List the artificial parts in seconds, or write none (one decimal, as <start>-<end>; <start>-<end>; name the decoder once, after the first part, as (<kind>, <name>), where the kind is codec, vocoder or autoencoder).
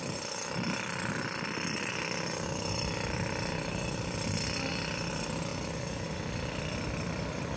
none